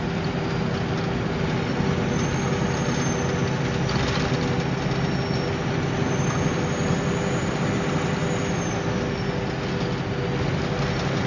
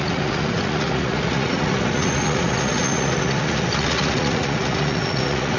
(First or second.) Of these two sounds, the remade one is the second